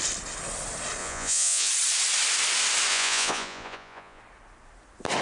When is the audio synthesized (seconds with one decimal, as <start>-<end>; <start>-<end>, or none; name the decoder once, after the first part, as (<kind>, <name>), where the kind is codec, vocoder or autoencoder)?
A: 1.0-1.7 (vocoder, Vocos); 2.9-4.2